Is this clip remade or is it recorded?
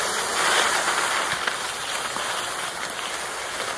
recorded